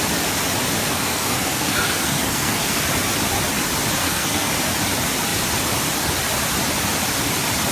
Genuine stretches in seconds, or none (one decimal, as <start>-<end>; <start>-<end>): 0.0-0.8; 2.8-4.0; 4.5-7.7